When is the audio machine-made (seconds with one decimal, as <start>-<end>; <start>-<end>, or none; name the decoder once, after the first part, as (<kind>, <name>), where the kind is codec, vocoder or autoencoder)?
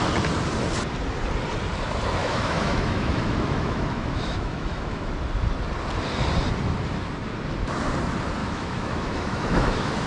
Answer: 2.2-5.1 (autoencoder, DAC-VAE); 8.4-10.1